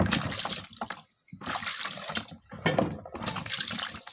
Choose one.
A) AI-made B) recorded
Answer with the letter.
B